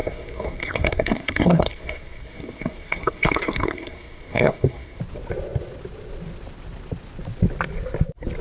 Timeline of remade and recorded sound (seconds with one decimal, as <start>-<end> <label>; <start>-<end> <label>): 0.0-5.0 remade; 5.0-8.4 recorded